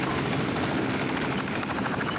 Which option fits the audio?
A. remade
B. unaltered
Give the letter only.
B